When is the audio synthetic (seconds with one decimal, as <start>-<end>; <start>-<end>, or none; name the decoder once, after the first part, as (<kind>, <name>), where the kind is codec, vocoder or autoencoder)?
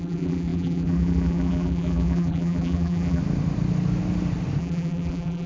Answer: 0.0-3.2 (vocoder, BigVGAN v2); 4.6-5.5